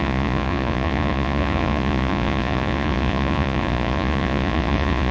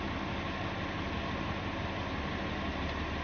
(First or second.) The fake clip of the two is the first